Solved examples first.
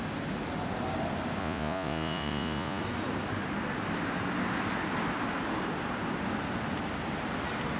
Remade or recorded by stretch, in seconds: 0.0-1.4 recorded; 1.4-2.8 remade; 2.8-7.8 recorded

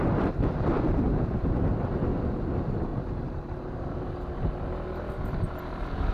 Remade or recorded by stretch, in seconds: 0.0-1.1 recorded; 1.1-1.9 remade; 1.9-2.9 recorded; 2.9-6.1 remade

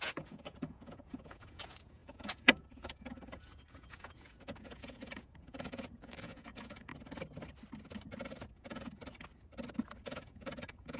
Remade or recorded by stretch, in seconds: 0.0-6.9 remade; 6.9-8.5 recorded; 8.5-9.0 remade; 9.0-10.0 recorded; 10.0-11.0 remade

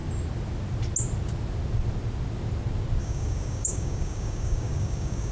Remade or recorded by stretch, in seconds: 0.0-3.0 recorded; 3.0-5.3 remade

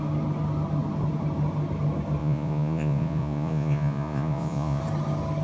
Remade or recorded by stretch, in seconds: 0.0-2.2 recorded; 2.2-4.8 remade; 4.8-5.4 recorded

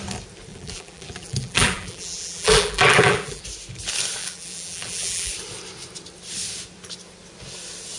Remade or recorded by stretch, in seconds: 0.0-0.5 recorded; 0.5-3.4 remade; 3.4-4.2 recorded; 4.2-5.3 remade; 5.3-8.0 recorded